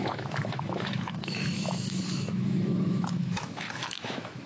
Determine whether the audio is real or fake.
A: fake